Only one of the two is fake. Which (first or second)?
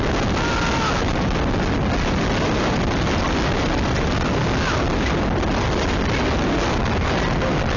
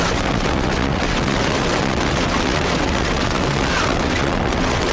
second